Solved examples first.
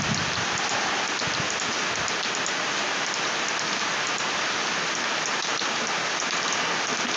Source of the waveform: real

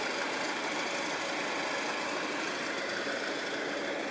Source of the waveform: real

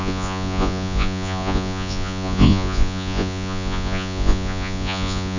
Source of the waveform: fake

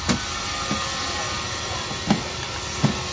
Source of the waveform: real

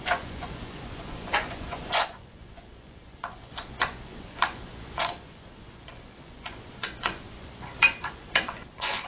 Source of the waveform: fake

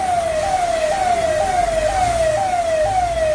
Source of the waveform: real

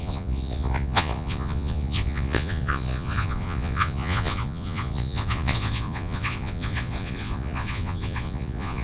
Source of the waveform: fake